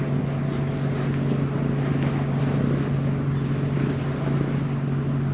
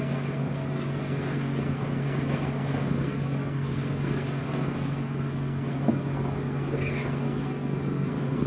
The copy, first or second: second